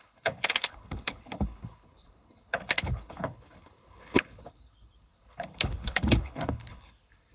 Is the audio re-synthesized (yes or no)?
yes